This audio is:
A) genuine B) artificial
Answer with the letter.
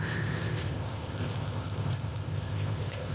B